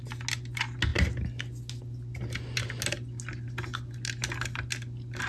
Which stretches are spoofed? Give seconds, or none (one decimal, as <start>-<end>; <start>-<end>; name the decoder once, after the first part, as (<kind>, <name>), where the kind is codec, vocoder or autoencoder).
none